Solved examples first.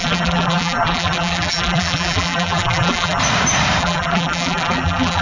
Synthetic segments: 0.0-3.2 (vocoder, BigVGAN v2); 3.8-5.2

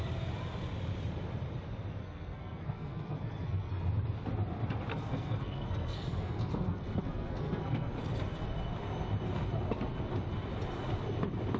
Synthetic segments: 2.0-3.7 (codec, SNAC); 4.9-7.9

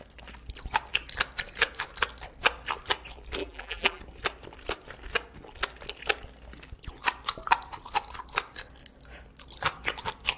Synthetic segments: 3.4-4.0 (vocoder, BigVGAN v2)

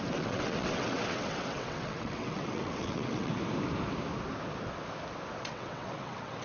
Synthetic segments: 0.0-3.3 (vocoder, WaveNeXt); 5.4-6.4

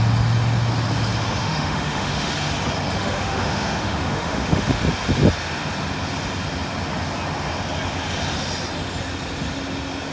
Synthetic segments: 1.4-2.3 (autoencoder, DAC-VAE); 3.0-4.8